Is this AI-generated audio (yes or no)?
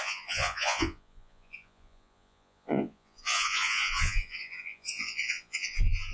yes